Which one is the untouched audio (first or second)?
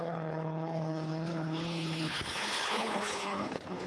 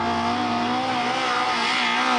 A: second